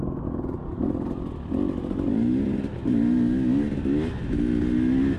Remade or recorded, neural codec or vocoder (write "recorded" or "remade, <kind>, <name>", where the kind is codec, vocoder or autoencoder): recorded